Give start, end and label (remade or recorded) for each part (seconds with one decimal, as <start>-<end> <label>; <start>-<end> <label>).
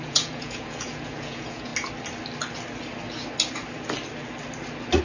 0.0-1.7 remade; 1.7-5.0 recorded